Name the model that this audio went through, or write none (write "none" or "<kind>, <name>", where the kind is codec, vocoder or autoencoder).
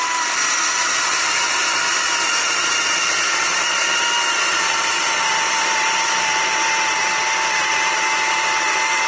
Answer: none